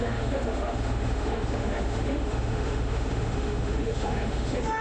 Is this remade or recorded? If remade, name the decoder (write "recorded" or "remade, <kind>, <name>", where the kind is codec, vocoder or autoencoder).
remade, autoencoder, DAC-VAE